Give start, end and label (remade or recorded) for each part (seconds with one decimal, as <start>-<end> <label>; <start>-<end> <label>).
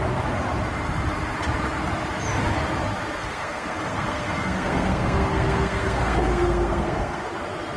0.0-3.2 recorded; 3.2-7.3 remade; 7.3-7.8 recorded